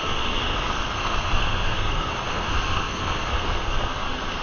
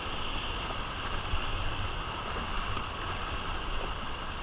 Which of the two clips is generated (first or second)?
first